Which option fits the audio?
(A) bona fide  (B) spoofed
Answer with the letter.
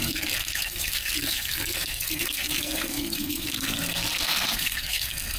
B